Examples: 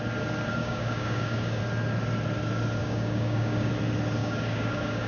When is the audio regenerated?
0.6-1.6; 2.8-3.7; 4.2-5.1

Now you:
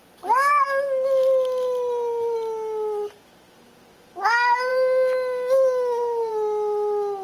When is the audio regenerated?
none